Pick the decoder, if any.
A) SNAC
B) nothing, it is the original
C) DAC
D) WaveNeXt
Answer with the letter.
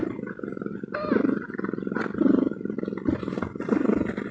B